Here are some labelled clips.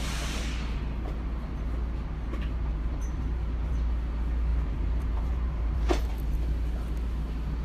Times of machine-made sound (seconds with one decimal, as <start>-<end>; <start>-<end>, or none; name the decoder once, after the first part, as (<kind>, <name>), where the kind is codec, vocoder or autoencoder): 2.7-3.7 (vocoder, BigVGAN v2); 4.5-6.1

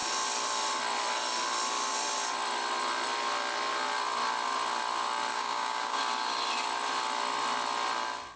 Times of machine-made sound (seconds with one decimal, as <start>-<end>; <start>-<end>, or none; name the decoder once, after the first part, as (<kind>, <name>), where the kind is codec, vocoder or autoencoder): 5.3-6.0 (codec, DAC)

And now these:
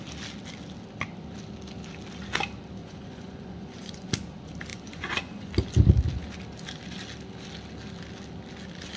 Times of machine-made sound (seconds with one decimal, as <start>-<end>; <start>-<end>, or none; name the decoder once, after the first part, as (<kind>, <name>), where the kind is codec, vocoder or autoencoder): 2.8-4.1 (vocoder, Vocos); 4.7-5.5

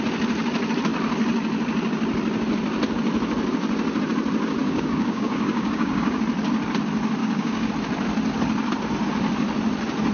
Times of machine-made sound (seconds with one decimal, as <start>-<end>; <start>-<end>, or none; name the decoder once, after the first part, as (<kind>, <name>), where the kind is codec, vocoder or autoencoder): 4.6-6.2 (codec, DAC); 7.2-7.7

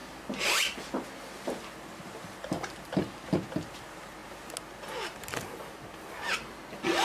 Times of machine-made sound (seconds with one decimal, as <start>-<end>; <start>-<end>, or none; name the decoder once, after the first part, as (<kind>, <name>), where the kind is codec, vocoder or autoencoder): none

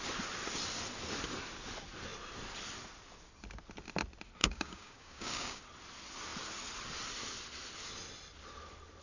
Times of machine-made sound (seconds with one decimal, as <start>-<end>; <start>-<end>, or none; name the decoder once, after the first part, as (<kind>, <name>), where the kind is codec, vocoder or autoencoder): 4.4-5.6 (codec, DAC)

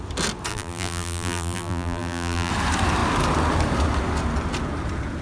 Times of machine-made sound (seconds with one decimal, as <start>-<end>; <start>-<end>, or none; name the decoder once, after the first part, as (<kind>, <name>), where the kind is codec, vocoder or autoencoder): 0.5-2.5 (vocoder, BigVGAN v2)